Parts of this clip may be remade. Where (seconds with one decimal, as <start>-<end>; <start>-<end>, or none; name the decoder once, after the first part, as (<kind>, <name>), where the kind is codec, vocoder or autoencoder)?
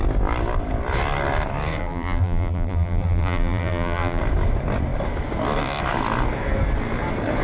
1.8-4.2 (vocoder, BigVGAN v2)